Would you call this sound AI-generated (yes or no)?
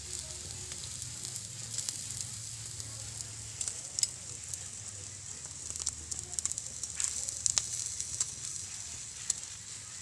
no